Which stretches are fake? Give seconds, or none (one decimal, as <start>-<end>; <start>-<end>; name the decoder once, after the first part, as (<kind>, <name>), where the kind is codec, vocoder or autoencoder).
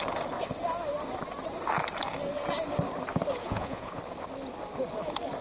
3.4-4.0 (vocoder, Vocos)